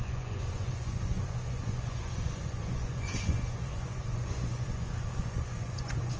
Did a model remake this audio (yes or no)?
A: yes